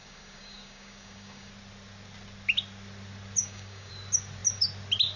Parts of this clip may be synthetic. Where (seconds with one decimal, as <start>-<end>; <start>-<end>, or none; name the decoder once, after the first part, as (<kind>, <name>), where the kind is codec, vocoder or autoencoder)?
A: 0.0-1.5 (codec, DAC); 3.4-3.9